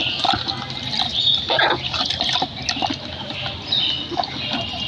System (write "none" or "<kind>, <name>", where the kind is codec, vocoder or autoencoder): none